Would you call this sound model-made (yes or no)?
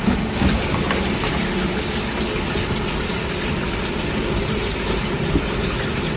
no